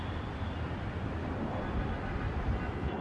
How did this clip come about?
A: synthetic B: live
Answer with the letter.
B